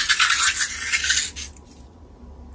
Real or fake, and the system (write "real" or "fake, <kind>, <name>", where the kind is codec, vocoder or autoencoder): real